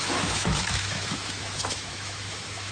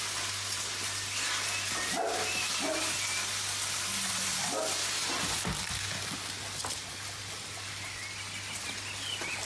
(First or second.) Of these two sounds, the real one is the second